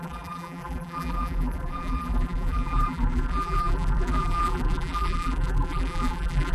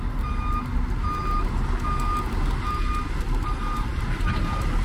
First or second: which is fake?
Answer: first